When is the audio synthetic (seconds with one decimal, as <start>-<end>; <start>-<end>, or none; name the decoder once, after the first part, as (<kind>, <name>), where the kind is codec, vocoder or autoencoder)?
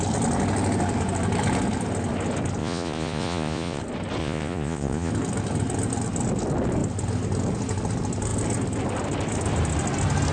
2.6-3.8 (vocoder, Vocos); 4.2-5.1